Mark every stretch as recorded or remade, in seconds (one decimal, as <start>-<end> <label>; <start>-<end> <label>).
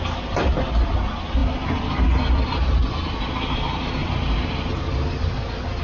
0.0-5.8 recorded